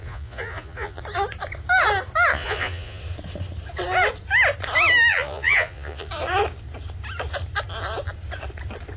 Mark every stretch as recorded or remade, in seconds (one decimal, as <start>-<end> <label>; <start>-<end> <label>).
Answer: 0.0-1.0 remade; 1.0-2.3 recorded; 2.3-3.0 remade; 3.0-5.1 recorded; 5.1-6.1 remade; 6.1-9.0 recorded